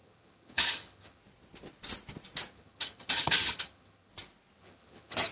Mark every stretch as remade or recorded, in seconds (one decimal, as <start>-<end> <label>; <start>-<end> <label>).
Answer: 0.0-1.2 remade; 1.2-2.5 recorded; 2.5-4.1 remade; 4.1-4.6 recorded; 4.6-5.3 remade